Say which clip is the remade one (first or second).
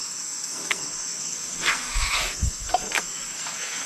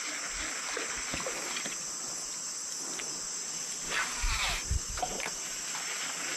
first